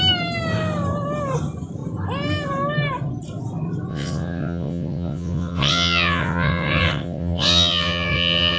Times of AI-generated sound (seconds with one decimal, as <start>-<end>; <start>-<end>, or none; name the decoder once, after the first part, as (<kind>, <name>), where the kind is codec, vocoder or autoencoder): 3.9-8.6 (vocoder, WaveNeXt)